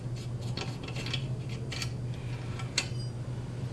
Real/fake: real